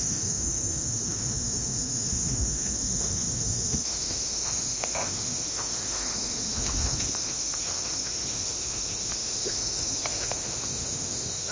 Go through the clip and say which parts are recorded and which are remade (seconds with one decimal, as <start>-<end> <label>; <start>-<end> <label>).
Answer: 0.0-11.5 remade